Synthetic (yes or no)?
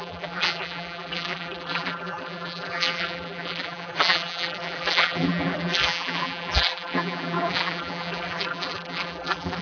yes